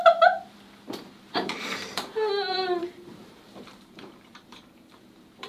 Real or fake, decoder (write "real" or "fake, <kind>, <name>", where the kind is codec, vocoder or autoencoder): fake, vocoder, BigVGAN v2